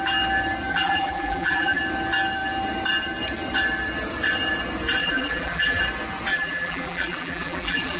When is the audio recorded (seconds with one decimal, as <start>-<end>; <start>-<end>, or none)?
0.0-0.7; 1.8-5.0; 5.8-6.3